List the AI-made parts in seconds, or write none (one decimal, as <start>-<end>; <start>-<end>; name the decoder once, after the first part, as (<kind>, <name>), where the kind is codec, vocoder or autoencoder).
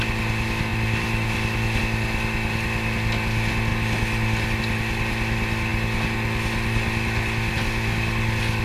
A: none